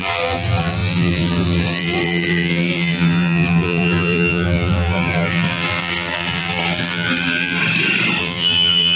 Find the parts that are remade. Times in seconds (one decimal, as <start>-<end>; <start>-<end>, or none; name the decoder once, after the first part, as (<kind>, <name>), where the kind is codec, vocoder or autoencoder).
0.0-7.6 (vocoder, BigVGAN v2); 8.2-9.0